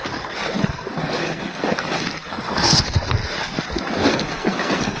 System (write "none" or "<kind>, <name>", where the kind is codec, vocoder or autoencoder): codec, SNAC